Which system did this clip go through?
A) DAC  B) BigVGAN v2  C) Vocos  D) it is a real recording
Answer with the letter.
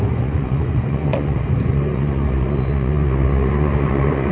C